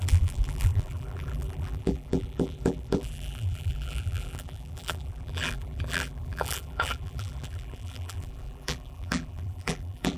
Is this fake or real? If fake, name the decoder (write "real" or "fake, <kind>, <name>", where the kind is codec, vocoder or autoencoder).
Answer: fake, vocoder, BigVGAN v2